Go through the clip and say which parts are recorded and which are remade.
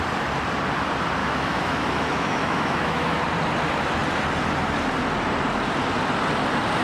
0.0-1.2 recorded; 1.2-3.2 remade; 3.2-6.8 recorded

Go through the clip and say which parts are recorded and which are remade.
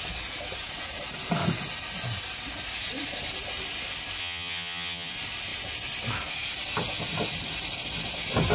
0.0-4.2 recorded; 4.2-5.1 remade; 5.1-8.5 recorded